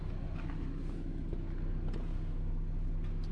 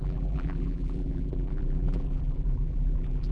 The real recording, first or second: first